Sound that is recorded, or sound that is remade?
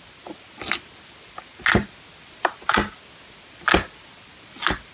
recorded